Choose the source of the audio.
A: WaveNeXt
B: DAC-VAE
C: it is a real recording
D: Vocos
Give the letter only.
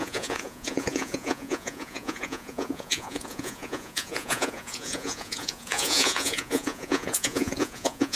D